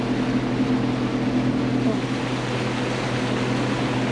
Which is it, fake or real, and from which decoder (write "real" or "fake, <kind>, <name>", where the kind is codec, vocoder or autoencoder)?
real